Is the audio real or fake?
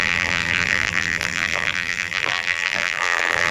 fake